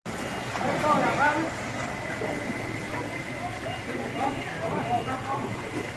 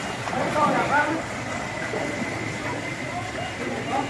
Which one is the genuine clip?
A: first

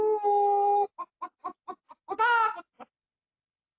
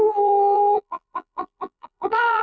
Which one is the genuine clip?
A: first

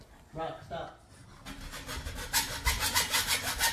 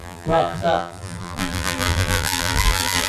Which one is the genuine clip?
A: first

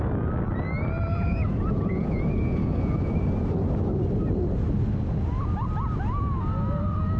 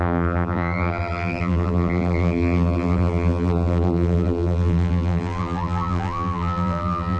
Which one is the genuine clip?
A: first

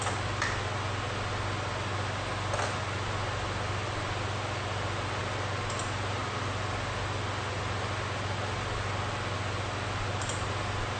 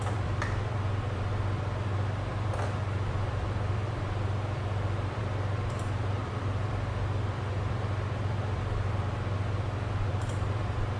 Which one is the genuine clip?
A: first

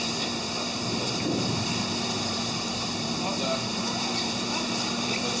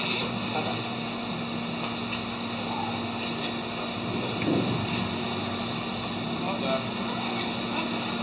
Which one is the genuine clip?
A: second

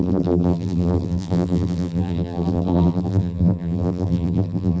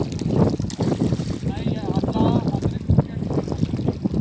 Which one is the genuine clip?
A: second